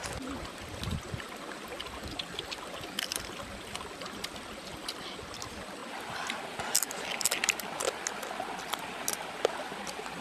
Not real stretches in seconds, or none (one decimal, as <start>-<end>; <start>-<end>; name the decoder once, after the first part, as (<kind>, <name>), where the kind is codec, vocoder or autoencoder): none